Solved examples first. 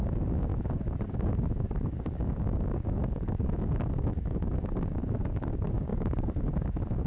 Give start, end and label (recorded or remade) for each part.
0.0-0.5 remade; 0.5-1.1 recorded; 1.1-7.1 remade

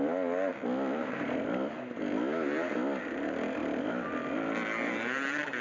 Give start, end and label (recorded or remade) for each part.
0.0-0.5 recorded; 0.5-1.0 remade; 1.0-3.6 recorded; 3.6-5.6 remade

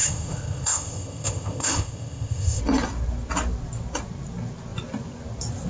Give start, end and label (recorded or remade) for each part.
0.0-2.6 remade; 2.6-5.7 recorded

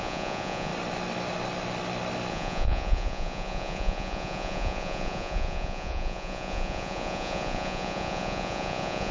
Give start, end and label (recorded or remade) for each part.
0.0-0.7 remade; 0.7-2.3 recorded; 2.3-9.1 remade

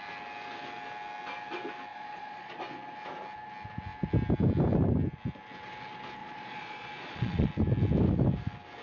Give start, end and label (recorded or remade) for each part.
0.0-1.9 recorded; 1.9-2.6 remade; 2.6-6.2 recorded; 6.2-7.5 remade; 7.5-8.8 recorded

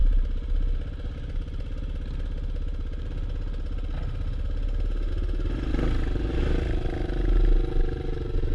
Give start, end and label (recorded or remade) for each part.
0.0-8.5 recorded